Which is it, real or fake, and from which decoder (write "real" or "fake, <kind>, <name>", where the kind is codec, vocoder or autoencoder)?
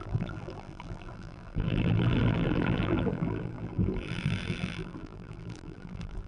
fake, vocoder, BigVGAN v2